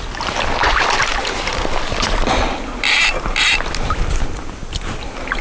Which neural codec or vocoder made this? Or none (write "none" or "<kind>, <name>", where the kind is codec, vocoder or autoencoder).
none